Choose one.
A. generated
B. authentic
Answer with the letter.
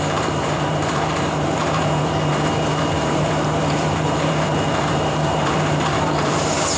A